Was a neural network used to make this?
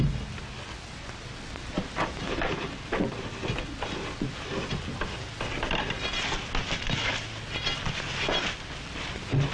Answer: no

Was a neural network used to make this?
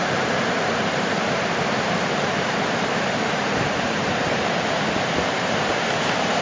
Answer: yes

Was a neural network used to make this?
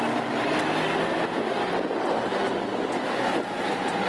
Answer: no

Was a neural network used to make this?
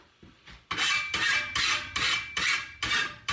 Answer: no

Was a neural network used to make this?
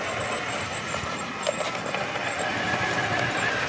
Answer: no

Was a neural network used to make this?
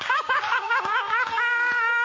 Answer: yes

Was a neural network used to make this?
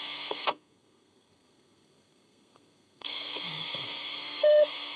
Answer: yes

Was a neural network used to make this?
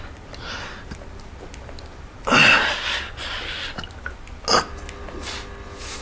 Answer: no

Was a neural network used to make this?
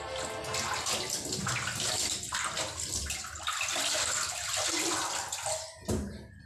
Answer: no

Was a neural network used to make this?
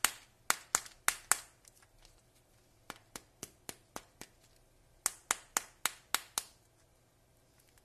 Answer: no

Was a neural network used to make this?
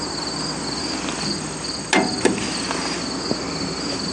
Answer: no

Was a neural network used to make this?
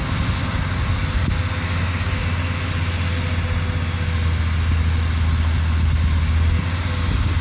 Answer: no